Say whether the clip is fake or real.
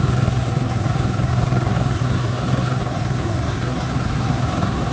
fake